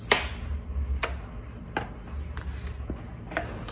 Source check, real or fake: real